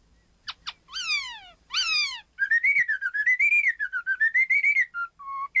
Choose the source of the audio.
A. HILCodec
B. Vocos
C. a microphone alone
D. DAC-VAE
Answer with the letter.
C